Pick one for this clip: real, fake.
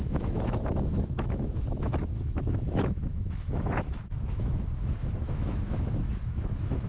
fake